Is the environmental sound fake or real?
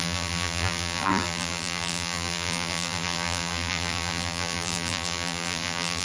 fake